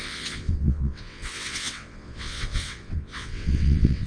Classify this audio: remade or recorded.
remade